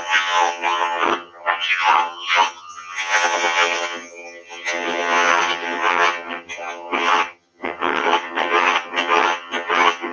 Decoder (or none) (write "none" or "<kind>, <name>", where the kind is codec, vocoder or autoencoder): vocoder, HiFi-GAN